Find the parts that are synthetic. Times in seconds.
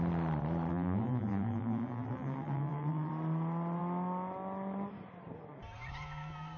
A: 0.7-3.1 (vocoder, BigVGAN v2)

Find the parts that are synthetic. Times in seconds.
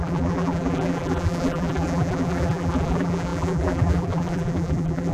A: 0.0-5.1 (vocoder, BigVGAN v2)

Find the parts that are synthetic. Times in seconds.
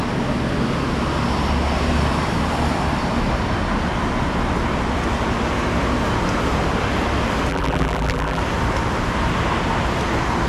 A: 7.5-8.4 (vocoder, BigVGAN v2)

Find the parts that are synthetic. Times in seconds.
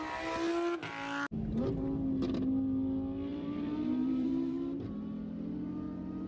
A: 3.3-4.9 (vocoder, BigVGAN v2)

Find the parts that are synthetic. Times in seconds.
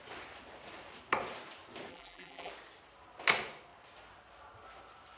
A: 1.9-2.5 (vocoder, BigVGAN v2)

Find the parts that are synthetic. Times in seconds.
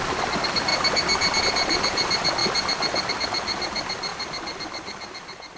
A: 0.0-0.7 (vocoder, BigVGAN v2); 1.4-2.4; 3.1-5.6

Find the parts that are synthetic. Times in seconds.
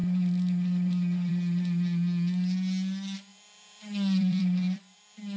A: 0.0-1.3 (vocoder, BigVGAN v2); 3.3-5.4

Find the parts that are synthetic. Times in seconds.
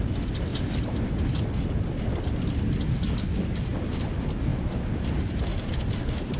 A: 5.5-6.4 (vocoder, BigVGAN v2)